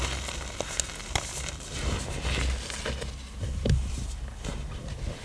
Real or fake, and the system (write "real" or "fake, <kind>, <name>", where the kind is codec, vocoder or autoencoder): real